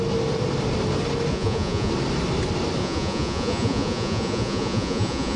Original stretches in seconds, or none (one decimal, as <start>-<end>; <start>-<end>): 0.0-1.3; 1.9-2.8